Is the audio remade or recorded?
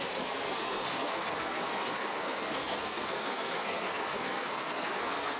remade